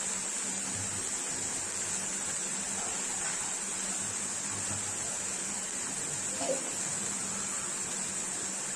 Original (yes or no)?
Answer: yes